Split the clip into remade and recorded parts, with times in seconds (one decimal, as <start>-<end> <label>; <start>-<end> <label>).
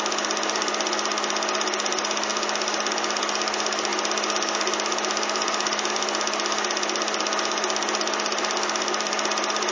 0.0-9.7 recorded